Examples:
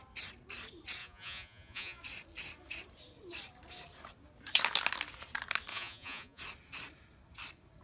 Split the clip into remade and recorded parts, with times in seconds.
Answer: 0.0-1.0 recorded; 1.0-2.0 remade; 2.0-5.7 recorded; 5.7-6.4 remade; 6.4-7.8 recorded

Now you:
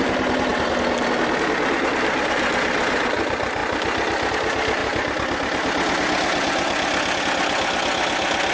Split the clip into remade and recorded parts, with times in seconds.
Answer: 0.0-8.5 recorded

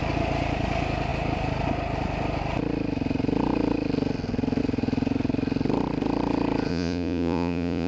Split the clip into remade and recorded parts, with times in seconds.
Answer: 0.0-6.7 recorded; 6.7-7.9 remade